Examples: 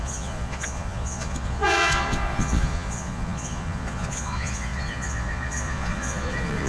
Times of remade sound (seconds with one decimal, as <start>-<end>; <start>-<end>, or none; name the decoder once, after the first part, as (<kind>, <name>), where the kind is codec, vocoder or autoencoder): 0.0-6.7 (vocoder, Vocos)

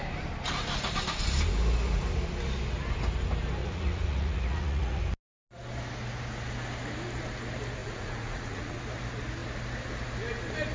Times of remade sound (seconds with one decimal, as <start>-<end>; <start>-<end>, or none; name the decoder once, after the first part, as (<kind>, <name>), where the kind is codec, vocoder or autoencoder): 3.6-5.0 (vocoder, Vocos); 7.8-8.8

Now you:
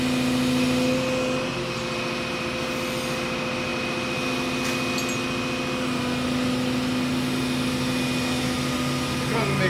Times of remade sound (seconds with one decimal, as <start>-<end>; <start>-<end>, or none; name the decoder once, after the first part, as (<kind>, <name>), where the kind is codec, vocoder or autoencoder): none

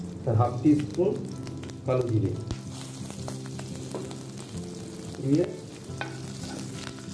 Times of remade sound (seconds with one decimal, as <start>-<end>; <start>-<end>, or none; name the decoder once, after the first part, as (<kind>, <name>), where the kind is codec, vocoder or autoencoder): none

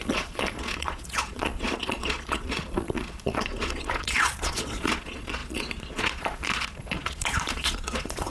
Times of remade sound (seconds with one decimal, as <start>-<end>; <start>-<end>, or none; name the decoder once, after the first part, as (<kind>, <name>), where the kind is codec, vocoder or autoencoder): 0.0-8.3 (vocoder, Vocos)

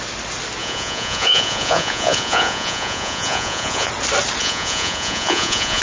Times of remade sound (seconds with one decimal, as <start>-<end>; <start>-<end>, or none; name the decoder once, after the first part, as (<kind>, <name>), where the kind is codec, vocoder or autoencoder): 0.6-3.9 (vocoder, Vocos); 4.4-5.8